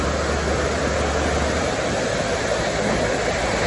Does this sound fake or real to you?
real